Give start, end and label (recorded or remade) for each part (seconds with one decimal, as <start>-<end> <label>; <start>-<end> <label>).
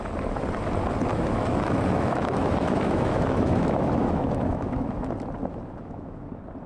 0.0-1.1 recorded; 1.1-5.1 remade; 5.1-5.5 recorded; 5.5-6.3 remade; 6.3-6.7 recorded